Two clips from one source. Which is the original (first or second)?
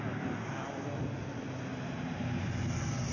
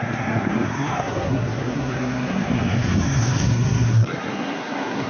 first